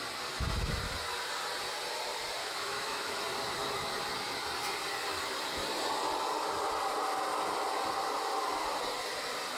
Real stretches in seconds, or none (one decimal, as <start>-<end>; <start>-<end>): 0.0-2.4; 3.2-9.6